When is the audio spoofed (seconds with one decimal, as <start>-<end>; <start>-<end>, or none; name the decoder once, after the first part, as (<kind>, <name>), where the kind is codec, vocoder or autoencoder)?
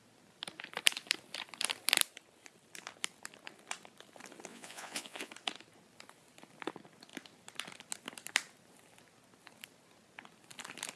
4.5-5.3 (vocoder, Vocos)